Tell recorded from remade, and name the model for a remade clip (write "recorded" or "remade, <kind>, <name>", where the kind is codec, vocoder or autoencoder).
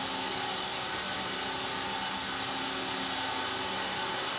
recorded